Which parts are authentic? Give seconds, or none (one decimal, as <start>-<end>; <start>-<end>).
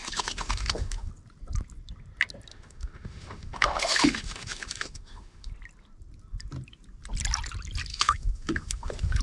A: 1.1-2.5; 5.5-7.9